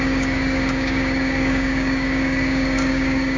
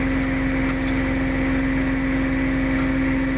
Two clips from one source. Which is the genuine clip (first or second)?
second